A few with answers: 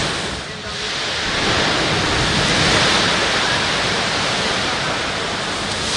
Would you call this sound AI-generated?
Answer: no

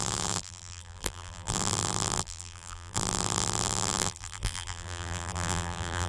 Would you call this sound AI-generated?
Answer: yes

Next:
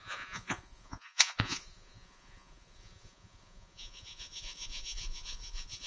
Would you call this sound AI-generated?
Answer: yes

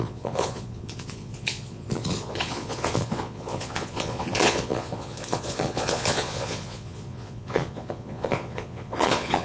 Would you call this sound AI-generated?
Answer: yes